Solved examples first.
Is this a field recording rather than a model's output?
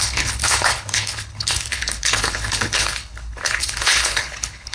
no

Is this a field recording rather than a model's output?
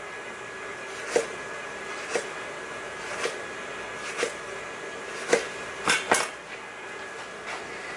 yes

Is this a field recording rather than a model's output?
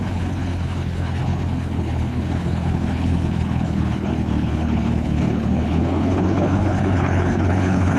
no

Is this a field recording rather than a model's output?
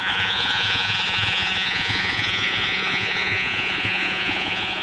no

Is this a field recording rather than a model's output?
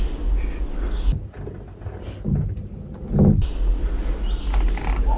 yes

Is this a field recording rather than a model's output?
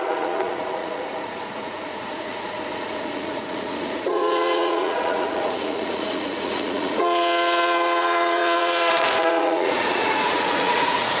no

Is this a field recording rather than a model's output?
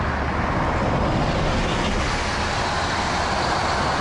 yes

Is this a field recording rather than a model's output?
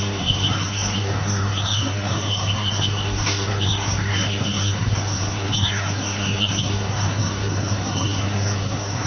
no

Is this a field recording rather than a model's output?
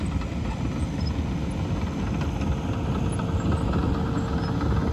yes